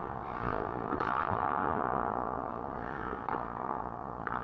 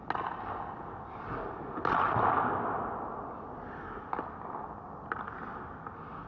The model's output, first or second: first